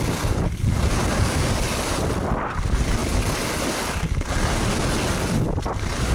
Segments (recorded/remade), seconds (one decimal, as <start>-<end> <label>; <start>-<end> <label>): 0.0-6.1 recorded